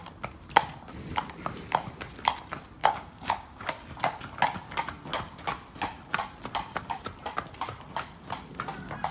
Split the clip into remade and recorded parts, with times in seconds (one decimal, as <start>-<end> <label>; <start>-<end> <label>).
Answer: 0.0-2.8 recorded; 2.8-3.7 remade; 3.7-9.1 recorded